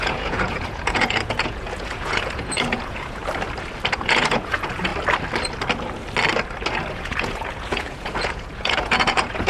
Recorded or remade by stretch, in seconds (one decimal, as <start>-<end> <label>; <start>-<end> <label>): 0.0-3.2 remade; 3.2-3.9 recorded; 3.9-4.9 remade; 4.9-6.9 recorded; 6.9-9.5 remade